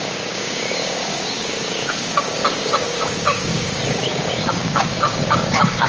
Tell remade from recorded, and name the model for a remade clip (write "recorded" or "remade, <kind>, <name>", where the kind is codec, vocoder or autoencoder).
remade, codec, DAC